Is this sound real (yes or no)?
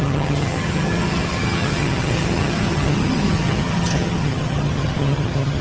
no